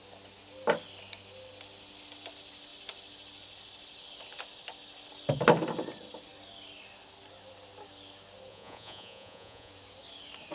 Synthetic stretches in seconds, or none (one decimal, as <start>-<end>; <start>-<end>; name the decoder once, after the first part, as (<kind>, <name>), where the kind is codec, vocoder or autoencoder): 8.5-9.7 (vocoder, Vocos)